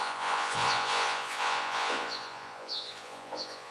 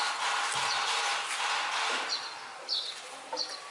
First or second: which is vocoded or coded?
first